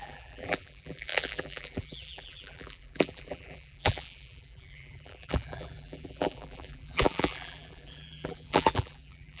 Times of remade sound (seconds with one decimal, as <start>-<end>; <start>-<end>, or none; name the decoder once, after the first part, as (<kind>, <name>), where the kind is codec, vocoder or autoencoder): 0.0-9.4 (vocoder, BigVGAN v2)